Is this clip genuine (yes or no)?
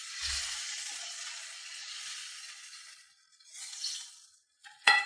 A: no